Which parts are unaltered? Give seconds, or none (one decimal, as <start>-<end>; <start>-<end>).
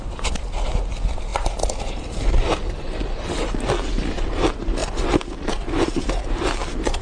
4.8-6.2